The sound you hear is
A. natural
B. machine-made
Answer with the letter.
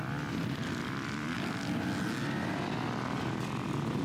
A